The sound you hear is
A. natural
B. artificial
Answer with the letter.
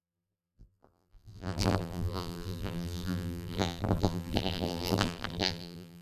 B